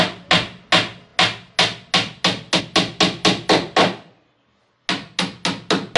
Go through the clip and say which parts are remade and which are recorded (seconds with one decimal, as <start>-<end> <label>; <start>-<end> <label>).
0.0-6.0 recorded